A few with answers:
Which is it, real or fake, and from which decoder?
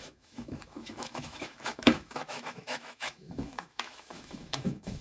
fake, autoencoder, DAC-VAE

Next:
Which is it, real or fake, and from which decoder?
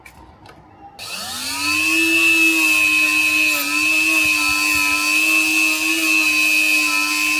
real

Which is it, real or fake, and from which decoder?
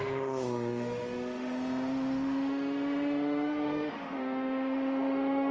fake, autoencoder, DAC-VAE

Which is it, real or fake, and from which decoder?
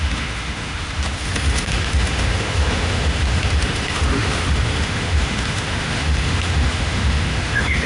fake, autoencoder, DAC-VAE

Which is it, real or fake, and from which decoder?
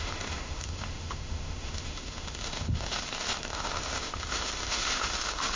fake, autoencoder, DAC-VAE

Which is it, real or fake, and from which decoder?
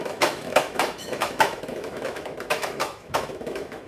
fake, autoencoder, DAC-VAE